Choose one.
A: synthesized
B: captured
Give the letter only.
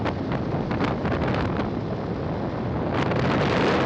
B